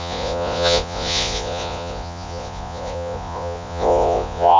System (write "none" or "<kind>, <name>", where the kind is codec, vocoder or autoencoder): vocoder, Vocos